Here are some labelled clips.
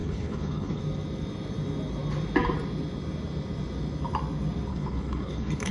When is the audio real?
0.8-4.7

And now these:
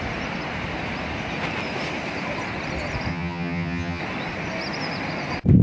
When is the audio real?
0.0-3.1; 4.0-5.6

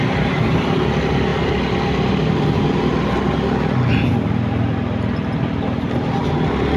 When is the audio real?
0.0-6.8

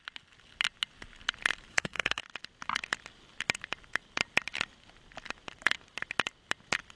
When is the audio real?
0.0-1.7; 2.2-7.0